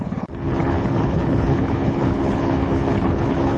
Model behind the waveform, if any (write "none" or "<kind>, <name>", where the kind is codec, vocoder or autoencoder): codec, HILCodec